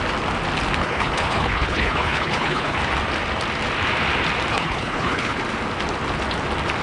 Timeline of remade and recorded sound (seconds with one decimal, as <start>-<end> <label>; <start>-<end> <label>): 0.0-0.8 recorded; 0.8-2.8 remade; 2.8-4.5 recorded; 4.5-5.4 remade; 5.4-6.8 recorded